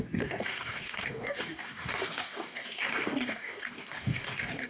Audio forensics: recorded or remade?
remade